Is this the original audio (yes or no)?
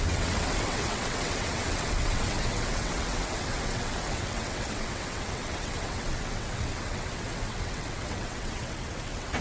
no